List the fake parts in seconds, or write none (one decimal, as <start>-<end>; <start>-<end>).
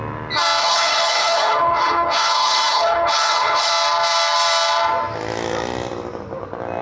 0.6-3.7